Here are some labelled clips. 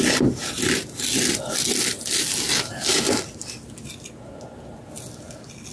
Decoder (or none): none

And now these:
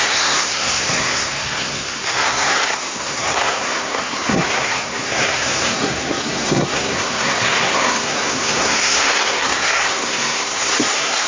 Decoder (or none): codec, SNAC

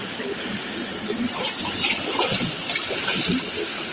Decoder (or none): none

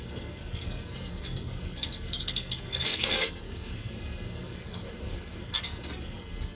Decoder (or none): codec, SNAC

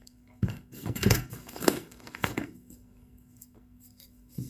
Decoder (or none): codec, SNAC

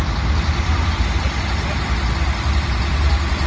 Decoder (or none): none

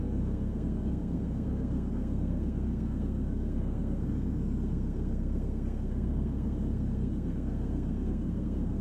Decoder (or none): codec, SNAC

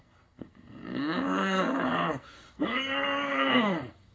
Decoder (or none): codec, SNAC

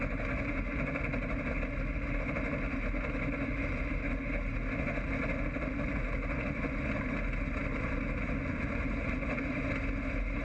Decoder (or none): none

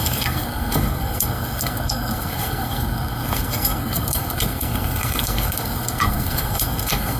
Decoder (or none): codec, SNAC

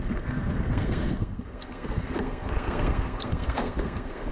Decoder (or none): codec, SNAC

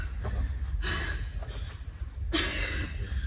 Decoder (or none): none